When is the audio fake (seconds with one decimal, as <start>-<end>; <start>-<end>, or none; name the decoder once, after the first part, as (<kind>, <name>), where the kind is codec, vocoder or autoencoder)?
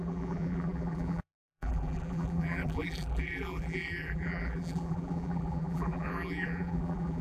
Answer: 0.0-7.2 (vocoder, BigVGAN v2)